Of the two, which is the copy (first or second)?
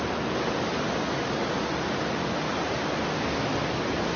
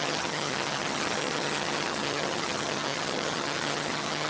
second